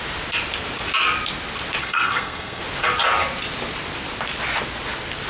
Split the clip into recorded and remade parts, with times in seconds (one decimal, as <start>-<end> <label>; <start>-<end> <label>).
0.0-1.8 recorded; 1.8-2.6 remade; 2.6-5.3 recorded